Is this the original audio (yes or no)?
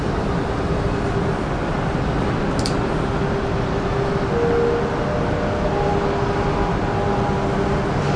yes